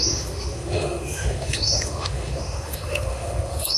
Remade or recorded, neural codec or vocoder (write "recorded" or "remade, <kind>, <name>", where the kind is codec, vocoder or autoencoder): remade, autoencoder, DAC-VAE